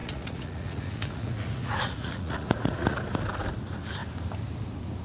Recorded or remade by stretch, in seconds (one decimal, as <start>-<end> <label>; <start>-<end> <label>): 0.0-3.0 remade; 3.0-5.0 recorded